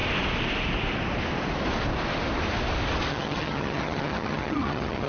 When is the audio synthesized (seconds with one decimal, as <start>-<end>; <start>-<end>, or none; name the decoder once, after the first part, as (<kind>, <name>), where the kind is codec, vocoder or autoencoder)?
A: 3.1-5.1 (vocoder, HiFi-GAN)